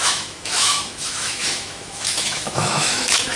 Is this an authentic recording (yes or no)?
no